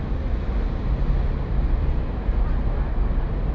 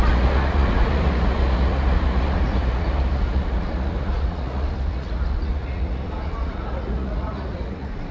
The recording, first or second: first